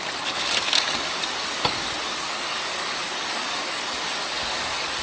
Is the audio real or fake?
fake